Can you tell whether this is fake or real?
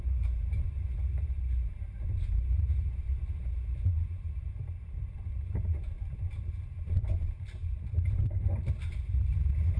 fake